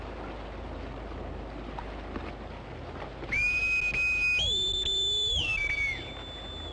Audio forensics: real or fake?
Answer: real